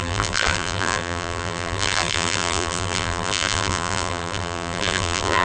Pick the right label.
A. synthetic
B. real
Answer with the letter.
A